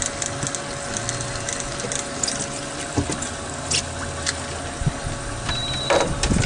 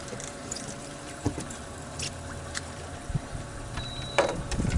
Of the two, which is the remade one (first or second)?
second